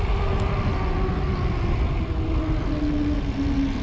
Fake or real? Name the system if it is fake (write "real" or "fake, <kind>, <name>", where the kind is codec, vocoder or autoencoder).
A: real